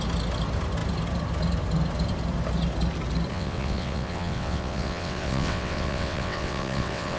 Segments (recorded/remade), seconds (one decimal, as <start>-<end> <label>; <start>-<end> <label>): 0.0-3.3 recorded; 3.3-7.2 remade